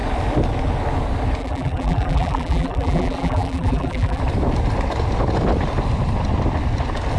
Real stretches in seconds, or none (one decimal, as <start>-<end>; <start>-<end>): 0.0-1.4; 4.2-7.2